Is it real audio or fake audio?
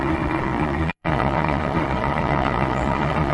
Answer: fake